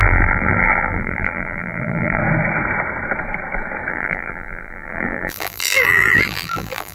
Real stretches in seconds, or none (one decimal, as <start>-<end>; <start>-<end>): 2.2-3.9